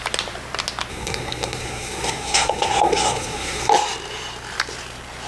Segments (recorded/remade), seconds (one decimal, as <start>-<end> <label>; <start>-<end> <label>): 0.0-0.9 recorded; 0.9-3.7 remade; 3.7-5.3 recorded